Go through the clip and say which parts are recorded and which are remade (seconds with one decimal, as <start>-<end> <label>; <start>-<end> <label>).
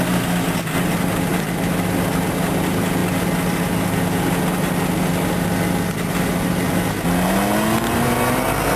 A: 0.0-8.8 recorded